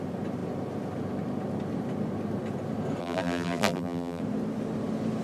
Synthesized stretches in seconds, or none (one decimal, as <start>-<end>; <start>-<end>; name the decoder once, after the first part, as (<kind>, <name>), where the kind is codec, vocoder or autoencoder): 3.0-4.2 (vocoder, BigVGAN v2)